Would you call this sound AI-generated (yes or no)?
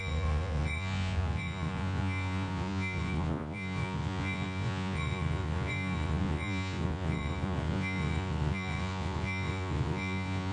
yes